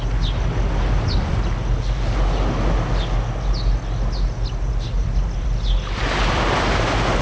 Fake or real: real